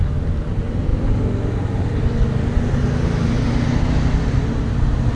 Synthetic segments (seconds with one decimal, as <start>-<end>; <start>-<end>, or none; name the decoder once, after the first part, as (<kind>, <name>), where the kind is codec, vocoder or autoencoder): none